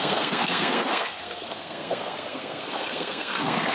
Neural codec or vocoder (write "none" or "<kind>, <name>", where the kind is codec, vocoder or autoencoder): codec, SNAC